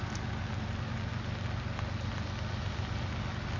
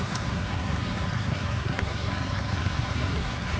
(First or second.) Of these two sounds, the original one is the first